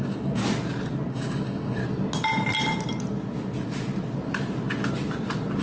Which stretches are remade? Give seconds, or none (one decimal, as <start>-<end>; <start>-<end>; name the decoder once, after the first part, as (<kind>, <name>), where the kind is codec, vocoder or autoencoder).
0.0-0.4 (codec, DAC); 1.1-1.8